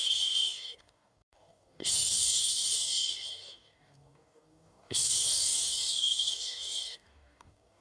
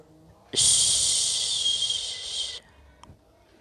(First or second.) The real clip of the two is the second